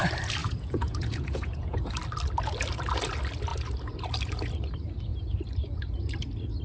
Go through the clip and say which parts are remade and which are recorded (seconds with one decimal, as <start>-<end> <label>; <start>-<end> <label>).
0.0-0.4 recorded; 0.4-1.9 remade; 1.9-6.6 recorded